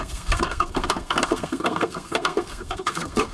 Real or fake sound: fake